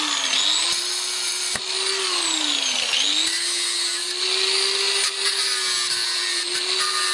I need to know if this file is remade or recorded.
recorded